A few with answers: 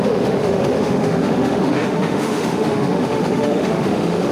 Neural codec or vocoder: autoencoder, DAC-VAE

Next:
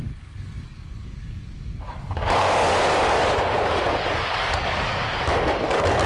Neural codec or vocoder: codec, DAC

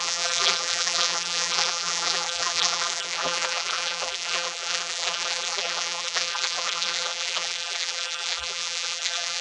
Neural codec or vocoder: vocoder, BigVGAN v2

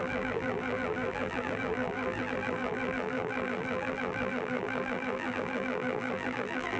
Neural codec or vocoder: vocoder, BigVGAN v2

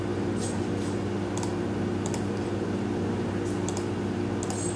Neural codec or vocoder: none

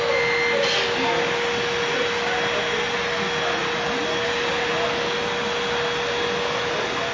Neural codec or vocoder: none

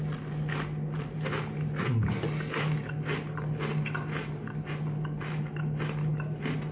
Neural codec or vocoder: none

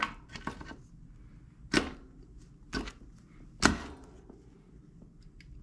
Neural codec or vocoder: none